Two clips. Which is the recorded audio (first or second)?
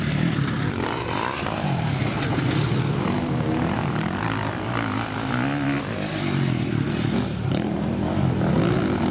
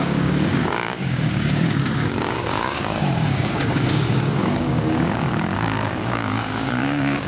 first